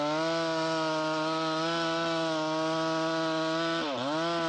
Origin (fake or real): real